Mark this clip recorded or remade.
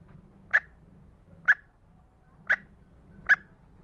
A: recorded